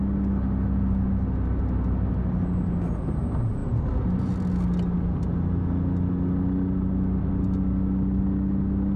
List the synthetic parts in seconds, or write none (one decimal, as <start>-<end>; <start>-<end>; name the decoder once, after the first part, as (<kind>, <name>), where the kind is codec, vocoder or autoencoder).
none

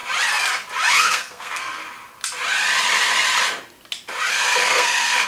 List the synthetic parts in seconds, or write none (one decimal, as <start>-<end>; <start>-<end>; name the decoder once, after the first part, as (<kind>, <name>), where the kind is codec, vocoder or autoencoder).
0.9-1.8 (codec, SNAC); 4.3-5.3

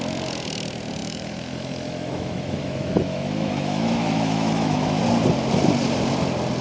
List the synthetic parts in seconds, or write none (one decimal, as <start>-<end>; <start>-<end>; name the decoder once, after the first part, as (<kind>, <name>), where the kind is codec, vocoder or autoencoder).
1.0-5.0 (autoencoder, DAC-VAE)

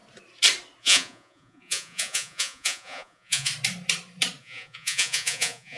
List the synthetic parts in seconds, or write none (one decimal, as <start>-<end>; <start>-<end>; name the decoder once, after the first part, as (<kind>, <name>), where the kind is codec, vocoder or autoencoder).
0.8-3.5 (vocoder, Vocos); 4.4-5.8

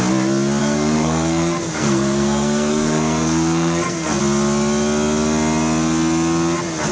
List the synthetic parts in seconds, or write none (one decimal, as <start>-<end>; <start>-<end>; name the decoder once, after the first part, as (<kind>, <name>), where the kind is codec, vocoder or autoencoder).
0.6-4.2 (codec, SNAC)